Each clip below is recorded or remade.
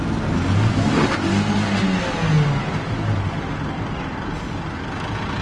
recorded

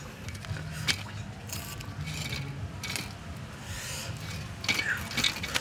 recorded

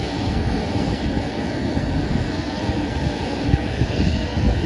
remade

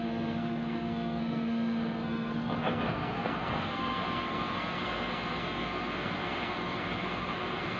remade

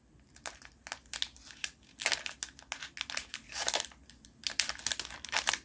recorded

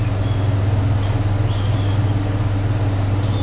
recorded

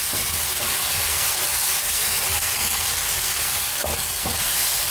remade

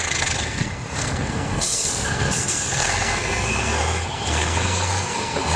remade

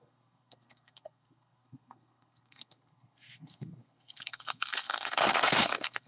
remade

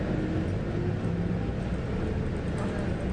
recorded